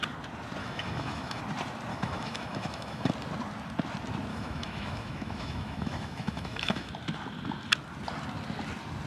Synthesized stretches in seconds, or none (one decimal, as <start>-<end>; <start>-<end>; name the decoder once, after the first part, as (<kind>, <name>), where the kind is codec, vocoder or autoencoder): 0.6-1.4 (autoencoder, DAC-VAE); 1.9-3.1; 4.3-6.9